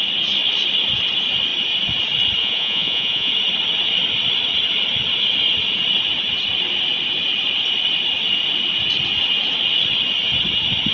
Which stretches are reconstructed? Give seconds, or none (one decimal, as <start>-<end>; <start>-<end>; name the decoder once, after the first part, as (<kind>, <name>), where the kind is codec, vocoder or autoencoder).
2.4-3.3 (vocoder, Vocos)